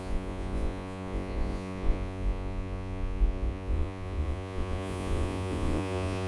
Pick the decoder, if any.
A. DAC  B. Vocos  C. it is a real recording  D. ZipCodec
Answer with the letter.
B